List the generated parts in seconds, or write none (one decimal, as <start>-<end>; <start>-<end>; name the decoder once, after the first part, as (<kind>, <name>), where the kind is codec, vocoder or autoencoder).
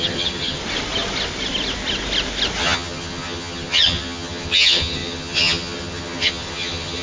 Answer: 0.0-0.6 (vocoder, HiFi-GAN); 2.6-7.0